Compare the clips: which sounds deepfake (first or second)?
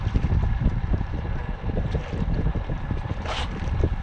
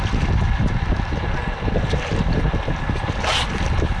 first